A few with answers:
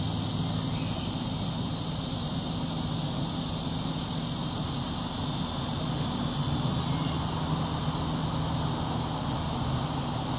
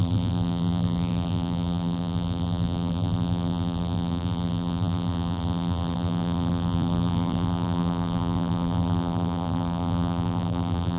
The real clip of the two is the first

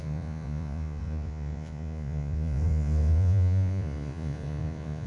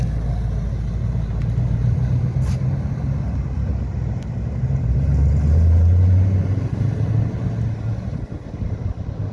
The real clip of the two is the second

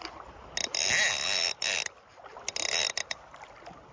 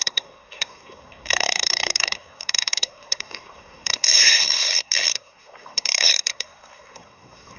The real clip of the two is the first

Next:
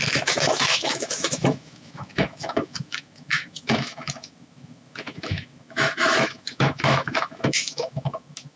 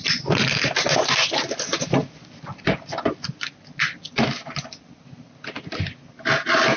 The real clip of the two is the second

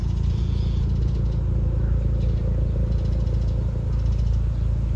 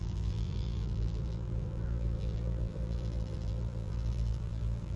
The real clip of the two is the first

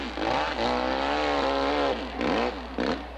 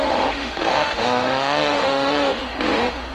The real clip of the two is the first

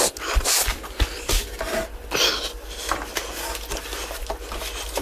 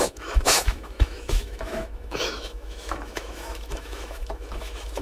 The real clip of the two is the first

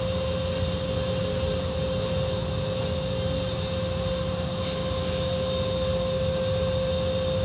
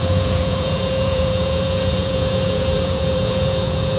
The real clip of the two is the first